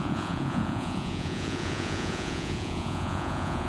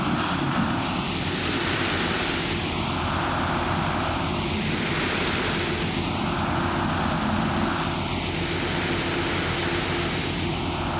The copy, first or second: first